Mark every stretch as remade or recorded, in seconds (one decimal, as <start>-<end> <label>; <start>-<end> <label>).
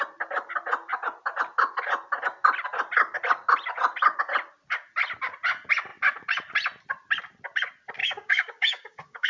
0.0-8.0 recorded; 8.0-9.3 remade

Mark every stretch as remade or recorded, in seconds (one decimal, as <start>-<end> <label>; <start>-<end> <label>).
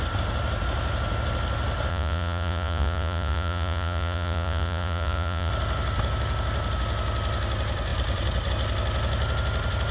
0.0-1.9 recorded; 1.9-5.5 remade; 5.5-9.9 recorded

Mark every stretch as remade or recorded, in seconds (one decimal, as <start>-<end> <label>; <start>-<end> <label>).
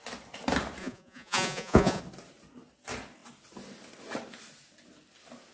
0.0-0.8 recorded; 0.8-2.0 remade; 2.0-5.5 recorded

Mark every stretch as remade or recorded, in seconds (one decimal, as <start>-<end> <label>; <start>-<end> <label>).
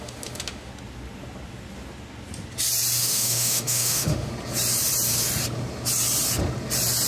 0.0-0.7 remade; 0.7-3.0 recorded; 3.0-4.3 remade; 4.3-7.1 recorded